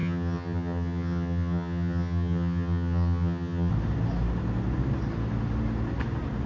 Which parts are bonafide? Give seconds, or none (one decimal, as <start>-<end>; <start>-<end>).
3.7-6.5